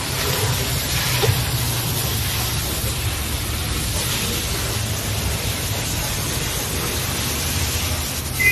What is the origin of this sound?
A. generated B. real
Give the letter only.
A